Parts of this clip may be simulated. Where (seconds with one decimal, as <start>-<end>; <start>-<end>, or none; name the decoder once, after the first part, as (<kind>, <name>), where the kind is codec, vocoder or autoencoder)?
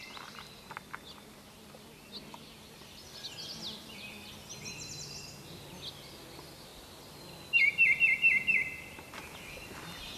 none